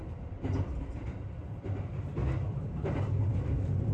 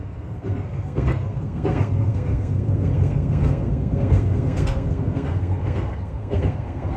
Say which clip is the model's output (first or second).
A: second